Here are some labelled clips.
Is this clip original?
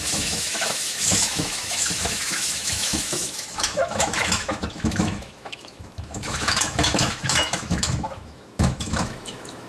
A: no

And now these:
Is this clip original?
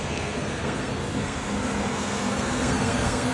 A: no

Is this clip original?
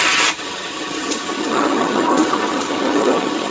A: no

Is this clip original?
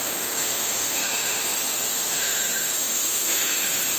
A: no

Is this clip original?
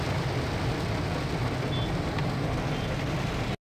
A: yes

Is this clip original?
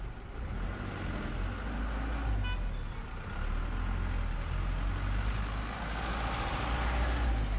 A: yes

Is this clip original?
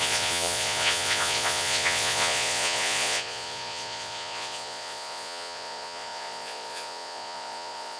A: no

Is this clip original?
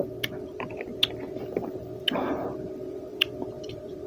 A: yes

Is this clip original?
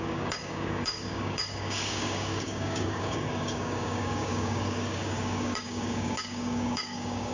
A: no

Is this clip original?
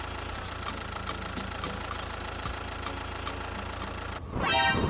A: yes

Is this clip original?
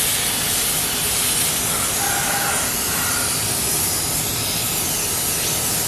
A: yes